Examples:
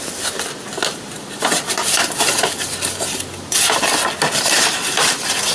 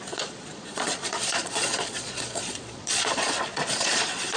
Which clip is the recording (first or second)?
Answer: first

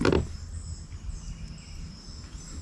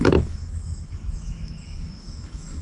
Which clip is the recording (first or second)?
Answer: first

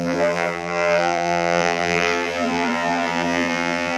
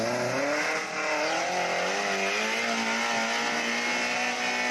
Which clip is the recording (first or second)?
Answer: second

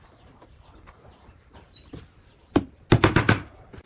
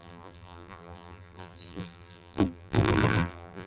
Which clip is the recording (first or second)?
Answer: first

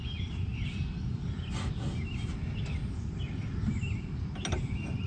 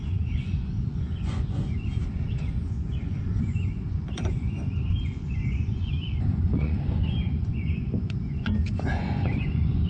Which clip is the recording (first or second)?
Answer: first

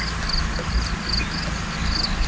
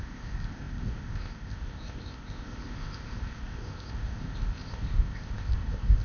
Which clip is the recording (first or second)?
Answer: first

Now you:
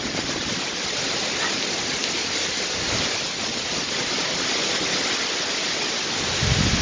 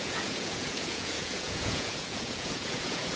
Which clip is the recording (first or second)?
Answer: first